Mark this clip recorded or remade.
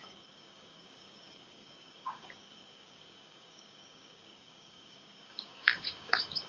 remade